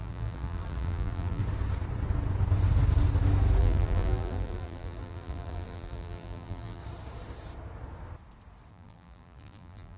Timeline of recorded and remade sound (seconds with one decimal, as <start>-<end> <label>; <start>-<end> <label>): 0.0-1.4 remade; 1.4-3.6 recorded; 3.6-6.8 remade; 6.8-8.7 recorded; 8.7-10.0 remade